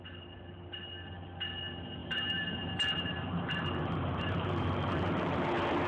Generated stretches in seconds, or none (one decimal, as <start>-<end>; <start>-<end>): 2.0-5.5